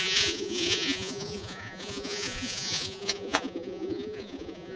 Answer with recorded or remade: remade